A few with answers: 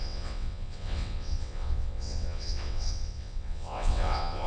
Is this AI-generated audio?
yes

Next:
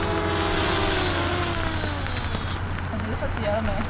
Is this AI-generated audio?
no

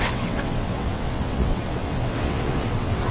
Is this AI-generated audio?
yes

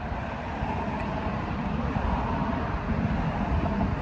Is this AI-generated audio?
no